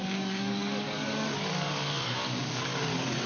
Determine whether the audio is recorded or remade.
remade